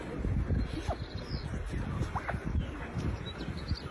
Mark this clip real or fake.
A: real